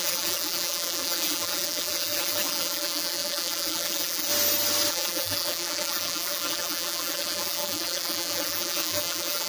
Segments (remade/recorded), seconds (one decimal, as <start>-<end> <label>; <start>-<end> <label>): 0.0-4.3 remade; 4.3-4.9 recorded; 4.9-9.5 remade